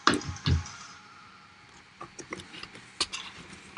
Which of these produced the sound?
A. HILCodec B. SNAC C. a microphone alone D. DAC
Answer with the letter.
C